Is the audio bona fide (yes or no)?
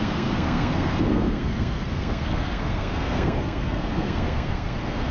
no